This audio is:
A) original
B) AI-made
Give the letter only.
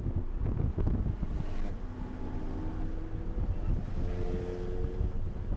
A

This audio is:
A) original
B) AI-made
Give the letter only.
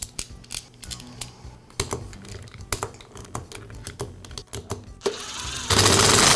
A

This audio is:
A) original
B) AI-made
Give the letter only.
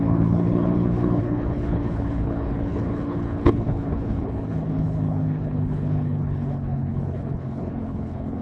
B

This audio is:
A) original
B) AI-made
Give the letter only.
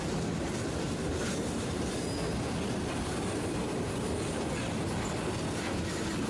A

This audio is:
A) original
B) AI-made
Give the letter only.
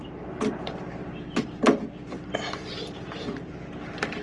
B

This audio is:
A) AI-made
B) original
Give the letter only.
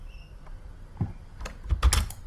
B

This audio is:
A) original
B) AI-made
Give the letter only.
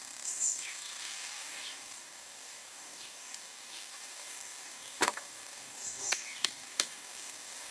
B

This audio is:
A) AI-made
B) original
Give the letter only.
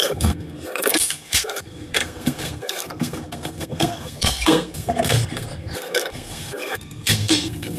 A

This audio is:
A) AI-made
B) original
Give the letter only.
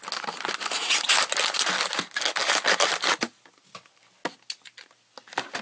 B